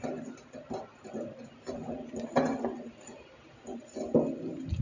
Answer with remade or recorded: recorded